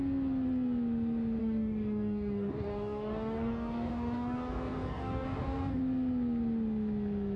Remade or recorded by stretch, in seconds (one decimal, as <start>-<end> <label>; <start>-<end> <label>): 0.0-1.4 recorded; 1.4-5.8 remade; 5.8-7.4 recorded